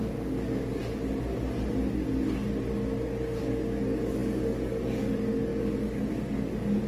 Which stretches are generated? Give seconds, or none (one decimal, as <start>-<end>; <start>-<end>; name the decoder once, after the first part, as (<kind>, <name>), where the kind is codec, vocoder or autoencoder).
0.0-0.8 (codec, DAC); 3.4-6.9

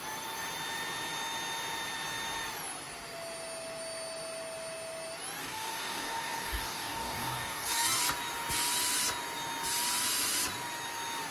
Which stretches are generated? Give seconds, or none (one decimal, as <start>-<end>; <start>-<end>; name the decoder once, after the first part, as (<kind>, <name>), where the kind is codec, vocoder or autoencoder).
5.4-8.0 (codec, DAC)

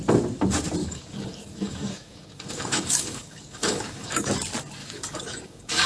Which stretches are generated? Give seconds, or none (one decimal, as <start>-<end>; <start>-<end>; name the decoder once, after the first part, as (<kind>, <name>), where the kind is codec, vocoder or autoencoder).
0.8-4.3 (codec, DAC); 4.8-5.9

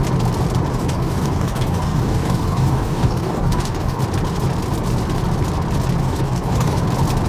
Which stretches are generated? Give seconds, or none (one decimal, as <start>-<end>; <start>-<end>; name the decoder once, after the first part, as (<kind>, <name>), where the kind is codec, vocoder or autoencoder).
0.7-4.0 (codec, DAC); 6.0-6.8

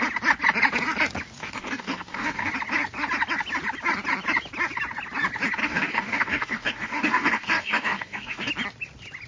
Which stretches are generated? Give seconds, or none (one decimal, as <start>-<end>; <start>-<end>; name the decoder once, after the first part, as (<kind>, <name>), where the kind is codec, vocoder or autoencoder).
1.4-2.5 (codec, DAC); 5.6-8.5

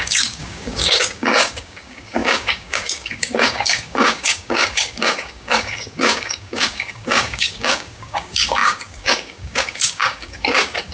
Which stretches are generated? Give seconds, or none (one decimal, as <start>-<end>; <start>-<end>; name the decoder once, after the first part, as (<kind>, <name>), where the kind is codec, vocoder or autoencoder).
0.0-10.9 (codec, DAC)